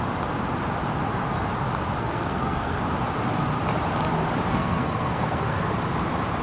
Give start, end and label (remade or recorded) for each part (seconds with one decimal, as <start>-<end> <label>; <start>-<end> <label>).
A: 0.0-2.0 recorded; 2.0-2.8 remade; 2.8-4.5 recorded; 4.5-5.7 remade; 5.7-6.4 recorded